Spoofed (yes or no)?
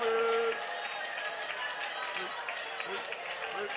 no